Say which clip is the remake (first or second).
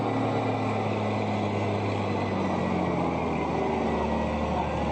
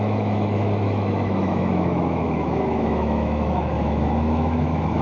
second